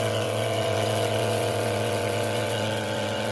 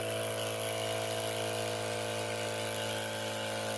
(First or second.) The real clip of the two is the second